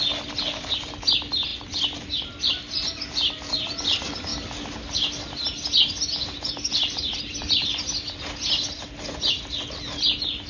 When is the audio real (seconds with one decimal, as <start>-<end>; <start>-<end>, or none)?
0.0-10.5